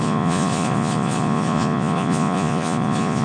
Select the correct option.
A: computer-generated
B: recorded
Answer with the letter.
A